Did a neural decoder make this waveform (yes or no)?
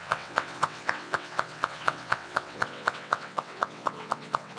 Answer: yes